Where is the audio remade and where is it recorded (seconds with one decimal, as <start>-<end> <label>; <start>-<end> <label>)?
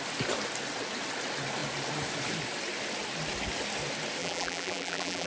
0.0-4.2 recorded; 4.2-5.3 remade